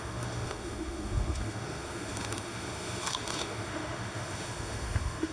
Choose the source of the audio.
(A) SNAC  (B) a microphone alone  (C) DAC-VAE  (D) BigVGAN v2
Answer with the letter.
C